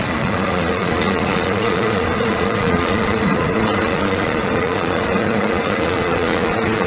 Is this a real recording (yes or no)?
no